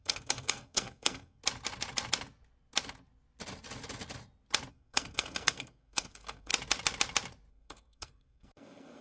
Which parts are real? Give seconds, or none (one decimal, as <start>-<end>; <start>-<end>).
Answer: 1.4-4.7; 6.5-7.5